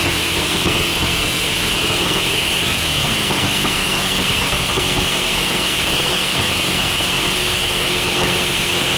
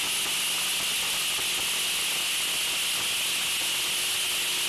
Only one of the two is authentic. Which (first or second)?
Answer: second